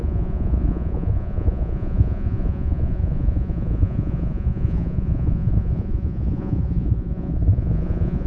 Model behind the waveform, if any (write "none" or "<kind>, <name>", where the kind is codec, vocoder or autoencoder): vocoder, Vocos